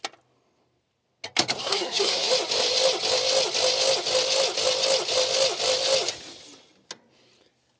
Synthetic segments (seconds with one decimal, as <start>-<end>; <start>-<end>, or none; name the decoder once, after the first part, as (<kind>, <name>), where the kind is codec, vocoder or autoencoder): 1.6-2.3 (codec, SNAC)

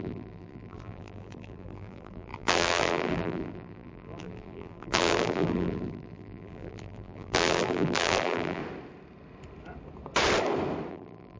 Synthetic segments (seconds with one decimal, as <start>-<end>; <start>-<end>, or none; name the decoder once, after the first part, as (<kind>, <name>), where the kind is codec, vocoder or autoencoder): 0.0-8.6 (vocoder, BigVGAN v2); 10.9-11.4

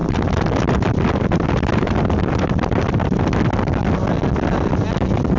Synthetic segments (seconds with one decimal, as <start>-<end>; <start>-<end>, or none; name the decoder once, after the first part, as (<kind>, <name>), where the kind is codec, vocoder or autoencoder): 0.0-3.2 (vocoder, BigVGAN v2)